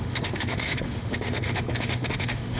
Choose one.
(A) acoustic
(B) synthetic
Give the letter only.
B